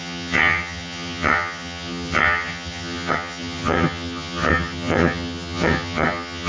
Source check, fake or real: fake